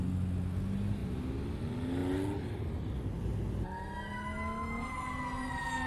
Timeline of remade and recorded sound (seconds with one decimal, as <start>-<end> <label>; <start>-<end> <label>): 0.0-5.9 recorded